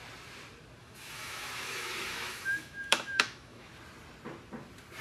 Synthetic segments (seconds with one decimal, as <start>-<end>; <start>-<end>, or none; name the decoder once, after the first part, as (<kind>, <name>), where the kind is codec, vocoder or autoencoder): 0.8-3.7 (autoencoder, DAC-VAE)